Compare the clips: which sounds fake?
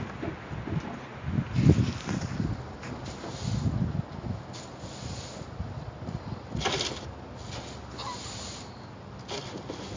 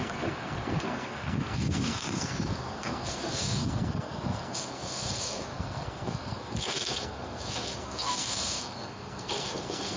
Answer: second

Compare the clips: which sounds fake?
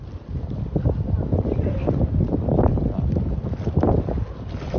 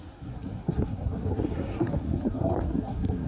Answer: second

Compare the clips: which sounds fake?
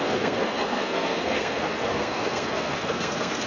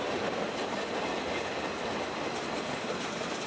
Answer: first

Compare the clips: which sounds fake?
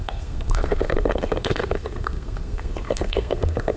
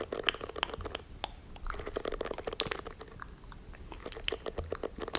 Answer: first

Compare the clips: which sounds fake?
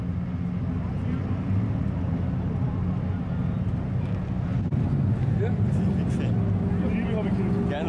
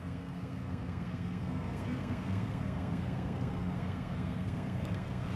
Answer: second